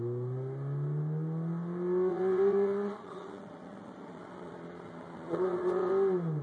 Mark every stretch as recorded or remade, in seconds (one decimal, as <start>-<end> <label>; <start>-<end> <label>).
0.0-2.1 recorded; 2.1-5.9 remade; 5.9-6.4 recorded